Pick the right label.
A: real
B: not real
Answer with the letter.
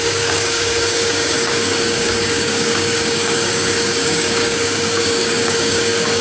B